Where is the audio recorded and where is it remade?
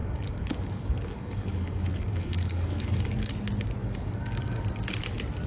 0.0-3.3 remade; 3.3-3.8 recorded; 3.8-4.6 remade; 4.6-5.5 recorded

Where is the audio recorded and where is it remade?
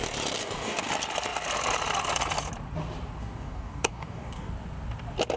0.0-0.4 recorded; 0.4-0.9 remade; 0.9-3.2 recorded; 3.2-4.5 remade; 4.5-5.4 recorded